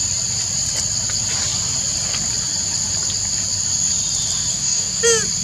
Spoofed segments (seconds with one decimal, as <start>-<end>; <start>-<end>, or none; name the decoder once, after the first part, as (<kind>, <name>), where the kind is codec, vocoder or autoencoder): 4.5-5.0 (codec, DAC)